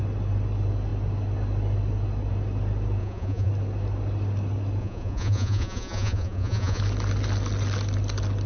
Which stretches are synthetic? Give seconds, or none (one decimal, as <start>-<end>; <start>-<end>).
3.0-3.5; 4.8-6.8

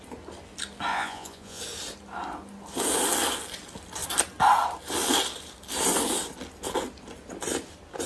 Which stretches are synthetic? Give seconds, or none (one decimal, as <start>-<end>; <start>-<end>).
0.9-1.6

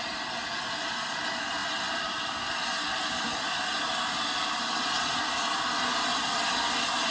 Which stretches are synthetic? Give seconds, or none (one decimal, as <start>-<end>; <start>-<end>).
none